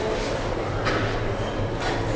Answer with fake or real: real